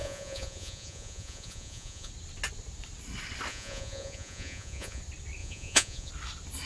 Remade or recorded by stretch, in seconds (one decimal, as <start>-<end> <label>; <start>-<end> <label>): 0.0-2.1 remade; 2.1-3.5 recorded; 3.5-5.0 remade; 5.0-5.4 recorded; 5.4-6.1 remade; 6.1-6.7 recorded